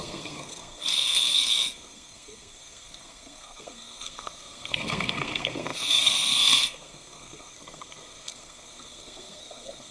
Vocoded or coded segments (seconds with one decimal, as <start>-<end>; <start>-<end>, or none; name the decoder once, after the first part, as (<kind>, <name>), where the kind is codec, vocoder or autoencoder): 0.0-9.9 (codec, SNAC)